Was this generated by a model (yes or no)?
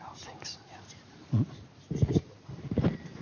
no